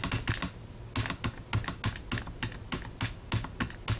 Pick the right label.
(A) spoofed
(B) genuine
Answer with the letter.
B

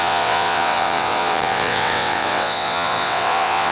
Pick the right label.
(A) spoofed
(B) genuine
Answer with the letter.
A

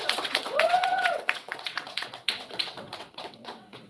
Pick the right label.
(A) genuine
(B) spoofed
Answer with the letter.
B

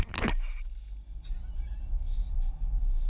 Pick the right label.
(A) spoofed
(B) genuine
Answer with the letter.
B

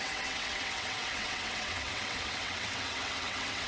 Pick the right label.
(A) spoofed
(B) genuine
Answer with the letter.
A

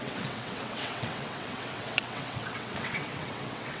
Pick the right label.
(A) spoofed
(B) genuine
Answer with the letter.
A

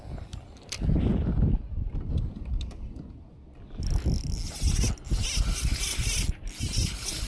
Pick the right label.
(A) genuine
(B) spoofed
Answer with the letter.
A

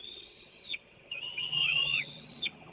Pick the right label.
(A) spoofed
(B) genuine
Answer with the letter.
A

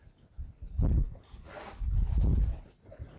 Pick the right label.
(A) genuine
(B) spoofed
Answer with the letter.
A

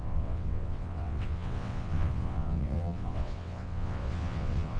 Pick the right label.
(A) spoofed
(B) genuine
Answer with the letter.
A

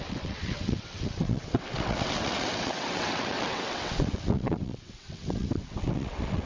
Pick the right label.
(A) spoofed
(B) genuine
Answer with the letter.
A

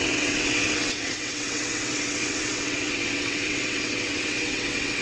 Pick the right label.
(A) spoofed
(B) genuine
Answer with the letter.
A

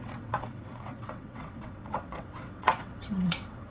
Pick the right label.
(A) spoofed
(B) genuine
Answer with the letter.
A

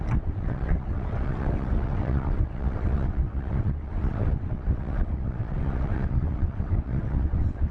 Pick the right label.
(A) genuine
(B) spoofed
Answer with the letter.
B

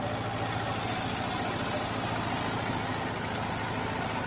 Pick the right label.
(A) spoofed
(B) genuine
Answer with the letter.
B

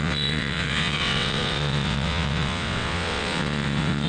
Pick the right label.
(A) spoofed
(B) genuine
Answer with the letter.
A